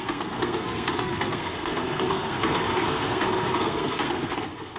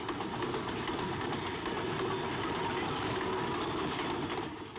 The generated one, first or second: first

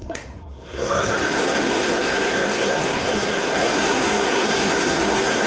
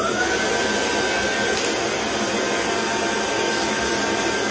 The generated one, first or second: first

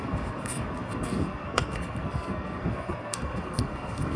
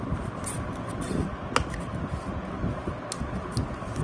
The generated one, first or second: first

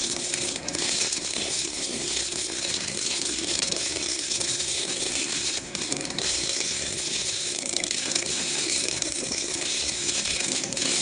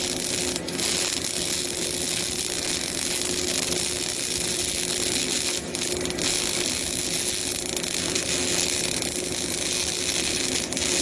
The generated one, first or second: first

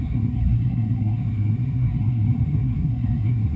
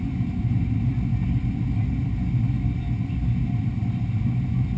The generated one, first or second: first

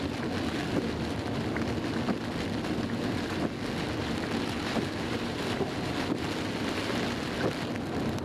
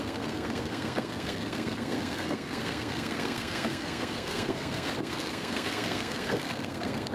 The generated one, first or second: second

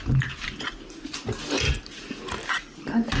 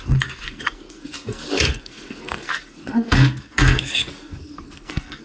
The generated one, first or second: second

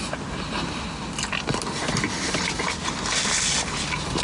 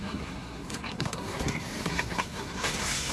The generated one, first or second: second